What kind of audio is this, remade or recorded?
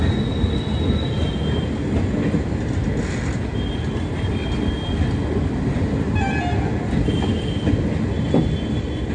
recorded